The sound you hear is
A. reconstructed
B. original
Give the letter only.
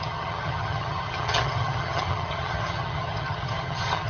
A